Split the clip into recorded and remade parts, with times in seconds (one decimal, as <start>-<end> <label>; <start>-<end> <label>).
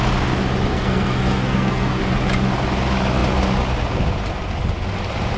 0.0-0.7 recorded; 0.7-2.0 remade; 2.0-5.4 recorded